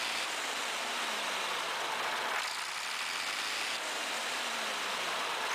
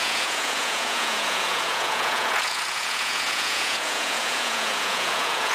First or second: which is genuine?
first